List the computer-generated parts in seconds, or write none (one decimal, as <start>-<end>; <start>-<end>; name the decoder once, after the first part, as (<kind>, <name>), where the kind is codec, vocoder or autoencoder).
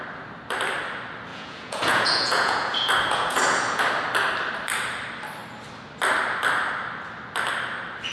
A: 1.3-3.8 (vocoder, Vocos)